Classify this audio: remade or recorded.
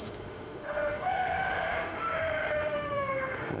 remade